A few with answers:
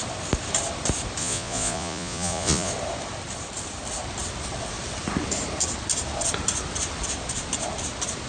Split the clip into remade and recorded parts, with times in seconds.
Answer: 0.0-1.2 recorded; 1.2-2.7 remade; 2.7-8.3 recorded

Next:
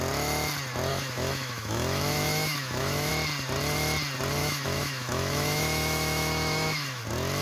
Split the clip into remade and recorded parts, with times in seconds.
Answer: 0.0-0.9 recorded; 0.9-3.1 remade; 3.1-4.4 recorded; 4.4-7.0 remade; 7.0-7.4 recorded

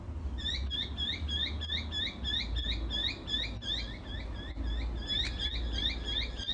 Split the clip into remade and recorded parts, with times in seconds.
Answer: 0.0-6.5 recorded

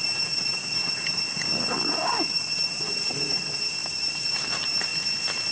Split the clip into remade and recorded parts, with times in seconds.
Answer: 0.0-0.6 remade; 0.6-2.7 recorded; 2.7-4.9 remade; 4.9-5.5 recorded

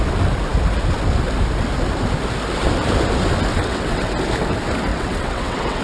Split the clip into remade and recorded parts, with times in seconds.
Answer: 0.0-3.5 recorded; 3.5-4.1 remade; 4.1-4.9 recorded; 4.9-5.8 remade

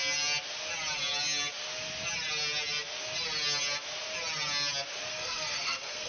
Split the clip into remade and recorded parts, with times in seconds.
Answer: 0.0-5.1 recorded; 5.1-6.1 remade

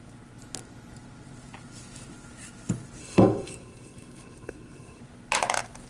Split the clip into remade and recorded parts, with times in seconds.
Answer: 0.0-3.0 recorded; 3.0-5.0 remade; 5.0-5.9 recorded

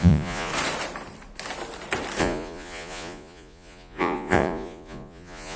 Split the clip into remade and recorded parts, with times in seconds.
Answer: 0.0-0.5 remade; 0.5-2.2 recorded; 2.2-5.6 remade